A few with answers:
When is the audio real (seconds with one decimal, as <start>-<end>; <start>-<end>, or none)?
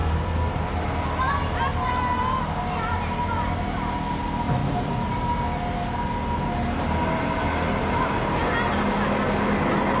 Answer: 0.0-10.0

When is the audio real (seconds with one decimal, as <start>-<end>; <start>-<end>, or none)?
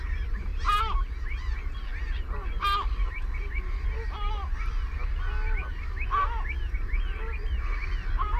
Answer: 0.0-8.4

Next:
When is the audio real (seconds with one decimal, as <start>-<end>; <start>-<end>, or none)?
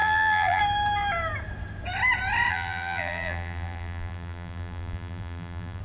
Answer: 0.6-2.5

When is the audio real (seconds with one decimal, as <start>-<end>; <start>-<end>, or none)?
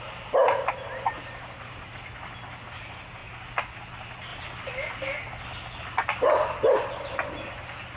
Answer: 0.0-8.0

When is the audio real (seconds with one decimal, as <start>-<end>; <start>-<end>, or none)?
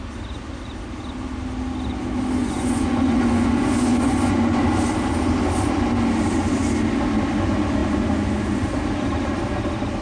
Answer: 0.0-2.4; 4.6-10.0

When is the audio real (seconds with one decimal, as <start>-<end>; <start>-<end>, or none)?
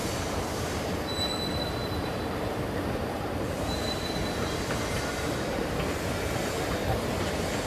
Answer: 0.8-1.8; 5.7-7.7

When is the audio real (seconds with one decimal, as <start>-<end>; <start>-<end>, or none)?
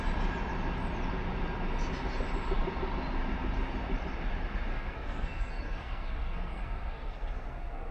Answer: 0.0-4.7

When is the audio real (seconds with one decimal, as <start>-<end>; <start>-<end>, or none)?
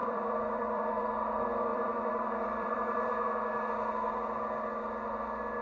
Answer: 1.0-1.7; 3.1-5.6